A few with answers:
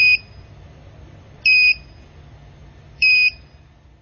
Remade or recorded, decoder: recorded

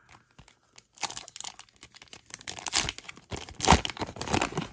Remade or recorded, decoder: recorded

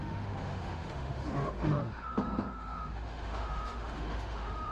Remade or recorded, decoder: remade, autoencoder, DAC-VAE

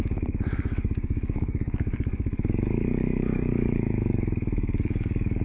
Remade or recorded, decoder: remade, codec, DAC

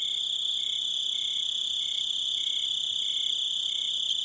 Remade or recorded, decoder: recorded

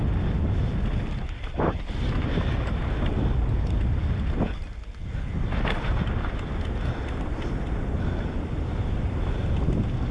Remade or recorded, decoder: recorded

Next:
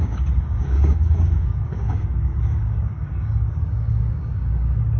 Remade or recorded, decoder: remade, codec, DAC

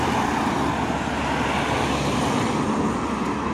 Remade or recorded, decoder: recorded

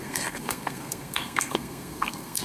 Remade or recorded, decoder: remade, codec, SNAC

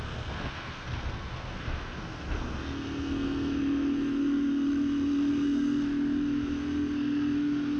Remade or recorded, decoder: remade, codec, SNAC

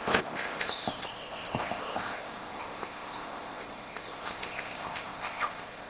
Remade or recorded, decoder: remade, codec, ZipCodec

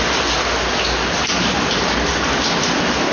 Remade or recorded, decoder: recorded